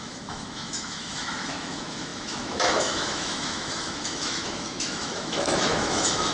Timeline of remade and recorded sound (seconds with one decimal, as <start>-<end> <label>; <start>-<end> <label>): 0.0-6.3 remade